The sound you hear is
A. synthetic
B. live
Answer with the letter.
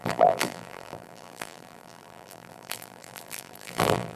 A